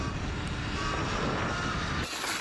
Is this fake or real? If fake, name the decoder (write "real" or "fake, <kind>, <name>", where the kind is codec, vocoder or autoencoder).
fake, vocoder, BigVGAN v2